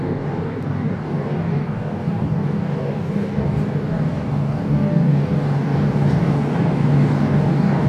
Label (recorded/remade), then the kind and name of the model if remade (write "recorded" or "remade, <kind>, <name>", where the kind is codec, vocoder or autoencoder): remade, codec, DAC